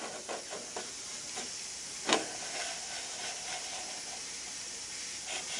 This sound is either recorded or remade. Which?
recorded